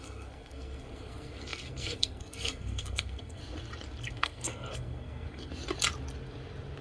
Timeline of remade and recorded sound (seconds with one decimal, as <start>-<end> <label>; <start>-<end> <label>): 0.0-3.4 remade; 3.4-4.1 recorded; 4.1-5.5 remade; 5.5-6.8 recorded